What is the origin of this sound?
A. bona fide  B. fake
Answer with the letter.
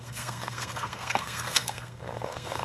B